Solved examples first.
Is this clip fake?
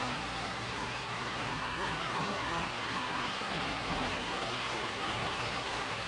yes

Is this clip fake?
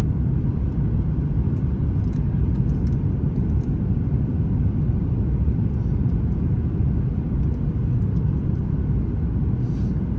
no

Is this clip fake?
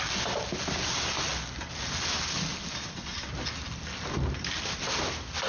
no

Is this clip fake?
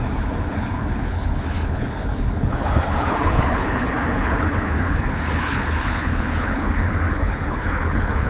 yes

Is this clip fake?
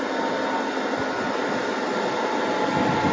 no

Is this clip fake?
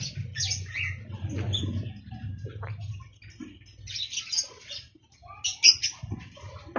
no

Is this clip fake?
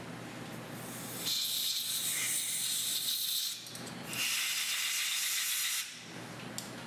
no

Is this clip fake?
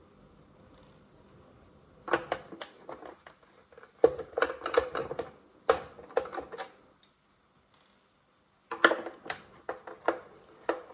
no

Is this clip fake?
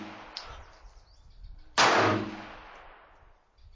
no